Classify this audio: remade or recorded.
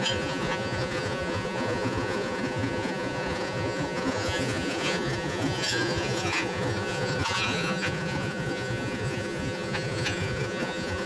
remade